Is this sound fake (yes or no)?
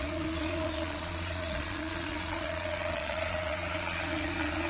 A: yes